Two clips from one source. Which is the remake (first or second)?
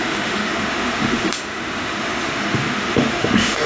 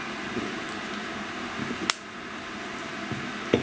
first